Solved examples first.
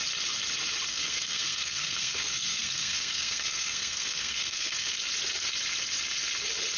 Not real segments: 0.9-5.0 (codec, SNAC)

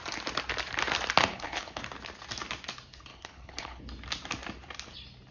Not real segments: 1.3-1.8 (codec, HILCodec); 3.1-3.8

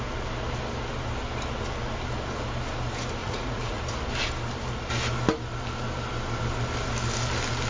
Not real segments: 3.2-3.8 (vocoder, Vocos)

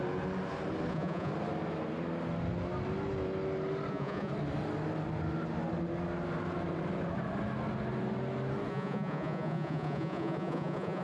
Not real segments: 0.9-1.3 (vocoder, Vocos); 3.9-4.3; 8.7-11.0

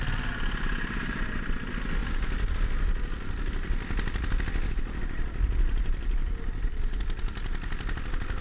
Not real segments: none

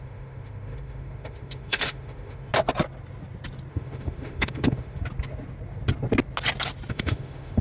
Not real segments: 0.0-2.5 (autoencoder, DAC-VAE); 3.7-5.0; 6.9-7.6